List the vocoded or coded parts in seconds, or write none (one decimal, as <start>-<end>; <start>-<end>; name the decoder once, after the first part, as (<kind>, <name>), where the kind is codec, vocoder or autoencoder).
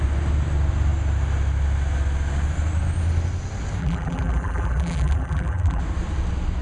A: 3.8-5.8 (vocoder, BigVGAN v2)